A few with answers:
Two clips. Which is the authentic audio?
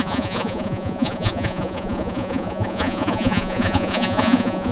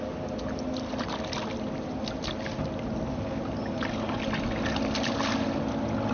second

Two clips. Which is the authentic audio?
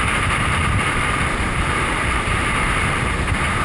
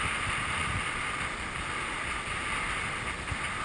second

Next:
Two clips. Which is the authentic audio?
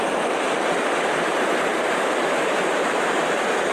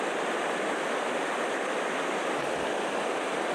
second